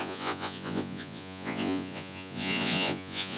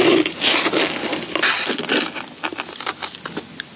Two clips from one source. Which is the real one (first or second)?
second